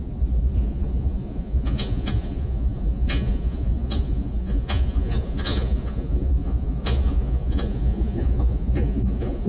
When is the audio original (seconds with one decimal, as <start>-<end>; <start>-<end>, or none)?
none